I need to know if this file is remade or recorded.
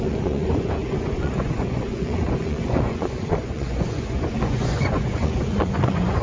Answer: remade